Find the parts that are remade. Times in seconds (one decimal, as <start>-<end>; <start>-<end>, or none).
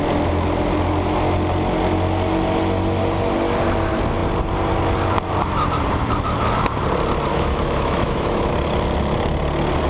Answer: 7.3-8.5